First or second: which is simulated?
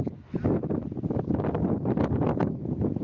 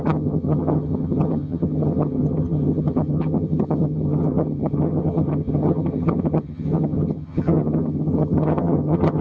second